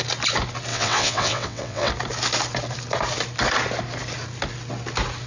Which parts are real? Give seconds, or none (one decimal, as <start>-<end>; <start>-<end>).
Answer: 0.0-0.7; 1.9-5.3